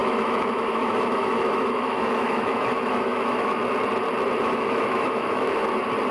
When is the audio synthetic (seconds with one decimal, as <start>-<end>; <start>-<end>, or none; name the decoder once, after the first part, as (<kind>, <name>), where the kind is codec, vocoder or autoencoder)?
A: 0.0-3.6 (autoencoder, DAC-VAE); 4.4-5.6

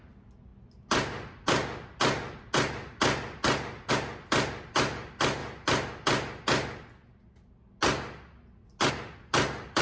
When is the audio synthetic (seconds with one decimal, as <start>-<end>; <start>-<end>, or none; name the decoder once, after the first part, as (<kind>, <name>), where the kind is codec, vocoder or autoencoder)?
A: none